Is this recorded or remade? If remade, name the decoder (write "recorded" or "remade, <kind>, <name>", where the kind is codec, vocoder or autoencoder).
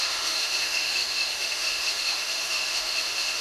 remade, autoencoder, DAC-VAE